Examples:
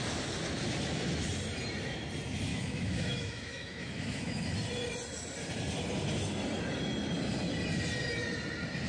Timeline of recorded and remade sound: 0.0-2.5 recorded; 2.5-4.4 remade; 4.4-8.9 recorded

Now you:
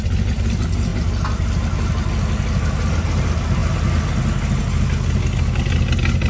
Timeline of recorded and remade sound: 0.0-6.3 recorded

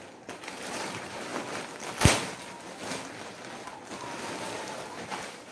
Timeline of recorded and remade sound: 0.0-1.3 remade; 1.3-4.6 recorded; 4.6-5.5 remade

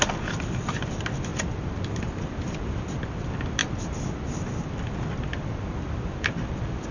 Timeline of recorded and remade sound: 0.0-6.9 recorded

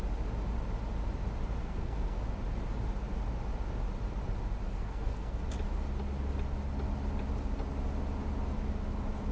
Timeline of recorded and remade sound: 0.0-1.6 recorded; 1.6-2.2 remade; 2.2-4.7 recorded; 4.7-5.4 remade; 5.4-9.3 recorded